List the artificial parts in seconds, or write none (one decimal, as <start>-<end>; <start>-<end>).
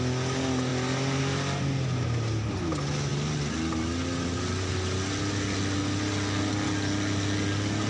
none